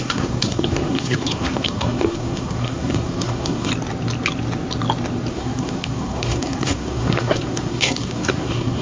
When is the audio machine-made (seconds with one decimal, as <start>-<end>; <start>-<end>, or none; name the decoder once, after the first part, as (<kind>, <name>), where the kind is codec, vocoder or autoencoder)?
0.0-3.7 (codec, SNAC); 5.3-8.8